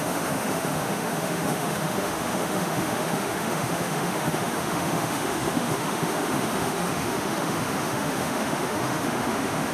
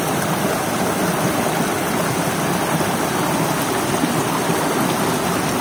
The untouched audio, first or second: second